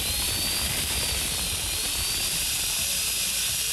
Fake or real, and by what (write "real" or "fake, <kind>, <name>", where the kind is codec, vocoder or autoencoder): fake, vocoder, BigVGAN v2